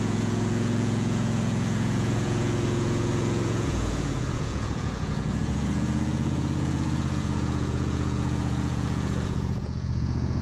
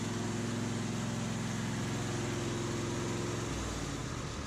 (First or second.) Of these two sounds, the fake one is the first